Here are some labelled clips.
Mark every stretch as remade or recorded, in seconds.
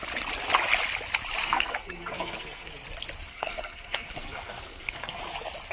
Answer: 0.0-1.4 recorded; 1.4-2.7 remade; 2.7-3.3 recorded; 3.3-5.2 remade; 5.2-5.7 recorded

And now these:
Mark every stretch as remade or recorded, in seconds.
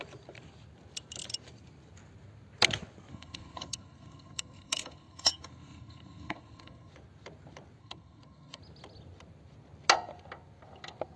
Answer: 0.0-3.1 recorded; 3.1-6.9 remade; 6.9-7.8 recorded; 7.8-8.6 remade; 8.6-11.2 recorded